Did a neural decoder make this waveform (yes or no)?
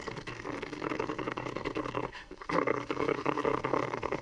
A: yes